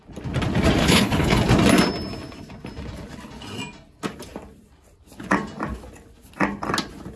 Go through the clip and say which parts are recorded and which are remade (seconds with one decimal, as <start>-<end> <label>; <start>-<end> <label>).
0.0-0.8 recorded; 0.8-1.4 remade; 1.4-7.2 recorded